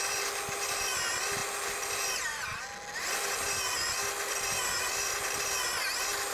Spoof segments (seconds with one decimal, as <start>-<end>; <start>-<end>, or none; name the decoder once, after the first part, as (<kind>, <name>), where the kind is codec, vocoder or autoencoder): none